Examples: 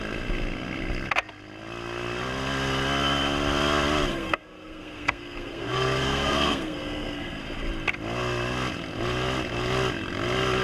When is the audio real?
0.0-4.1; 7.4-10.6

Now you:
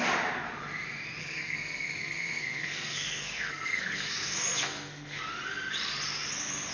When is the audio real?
0.0-1.2; 5.2-6.7

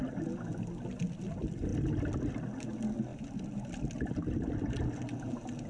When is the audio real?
0.0-5.7

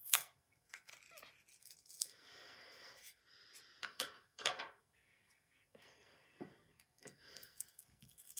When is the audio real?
0.9-1.6; 3.2-3.8

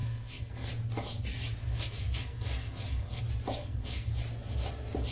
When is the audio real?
0.7-1.6; 3.2-3.6; 4.1-5.1